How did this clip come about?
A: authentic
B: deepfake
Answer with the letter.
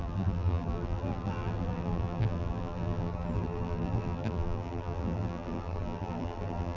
B